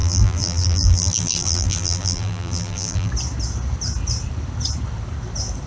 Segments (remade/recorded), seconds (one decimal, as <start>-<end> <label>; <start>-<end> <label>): 0.0-3.1 remade; 3.1-5.7 recorded

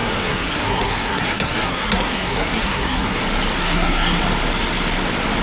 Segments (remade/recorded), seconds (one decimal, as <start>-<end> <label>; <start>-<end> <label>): 0.0-3.2 remade; 3.2-3.6 recorded; 3.6-4.2 remade; 4.2-5.4 recorded

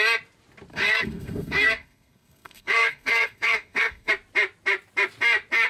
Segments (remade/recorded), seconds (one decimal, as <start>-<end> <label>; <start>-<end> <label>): 0.0-0.7 recorded; 0.7-4.1 remade; 4.1-5.7 recorded

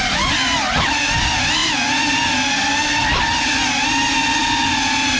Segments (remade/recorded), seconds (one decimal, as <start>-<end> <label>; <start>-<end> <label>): 0.0-5.2 recorded